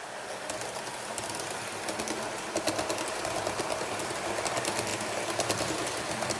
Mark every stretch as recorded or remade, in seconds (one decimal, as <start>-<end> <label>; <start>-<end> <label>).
0.0-6.4 recorded